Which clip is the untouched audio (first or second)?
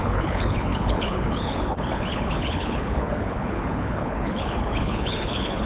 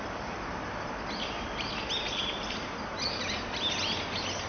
second